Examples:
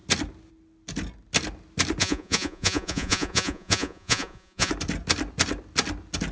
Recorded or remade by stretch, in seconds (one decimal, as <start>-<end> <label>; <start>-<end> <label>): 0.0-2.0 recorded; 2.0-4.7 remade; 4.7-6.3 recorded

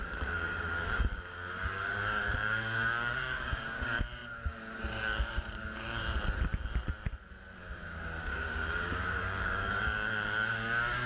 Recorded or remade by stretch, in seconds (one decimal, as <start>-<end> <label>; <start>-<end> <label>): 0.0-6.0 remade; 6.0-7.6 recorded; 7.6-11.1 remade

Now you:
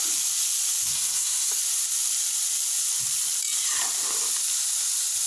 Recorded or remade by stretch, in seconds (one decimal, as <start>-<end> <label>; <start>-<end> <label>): 0.0-0.9 recorded; 0.9-1.6 remade; 1.6-5.3 recorded